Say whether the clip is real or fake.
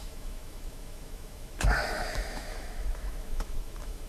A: fake